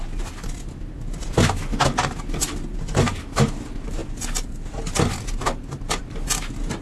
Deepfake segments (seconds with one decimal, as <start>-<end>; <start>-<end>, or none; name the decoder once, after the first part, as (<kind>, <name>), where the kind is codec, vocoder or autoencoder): none